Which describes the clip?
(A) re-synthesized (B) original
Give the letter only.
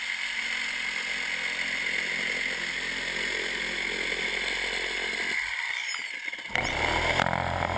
B